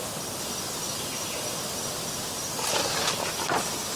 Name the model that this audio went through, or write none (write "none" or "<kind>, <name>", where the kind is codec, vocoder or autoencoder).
none